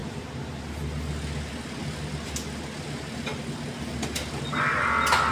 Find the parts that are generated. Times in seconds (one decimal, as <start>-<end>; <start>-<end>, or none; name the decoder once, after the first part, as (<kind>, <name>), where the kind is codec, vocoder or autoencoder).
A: none